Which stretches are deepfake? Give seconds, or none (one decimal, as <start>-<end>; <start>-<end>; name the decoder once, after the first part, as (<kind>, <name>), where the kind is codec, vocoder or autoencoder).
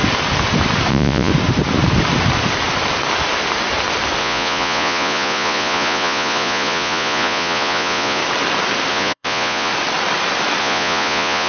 0.9-1.3 (vocoder, Vocos); 4.2-8.2; 8.9-9.7; 10.6-11.5